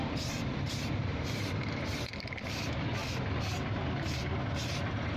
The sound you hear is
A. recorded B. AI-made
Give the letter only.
B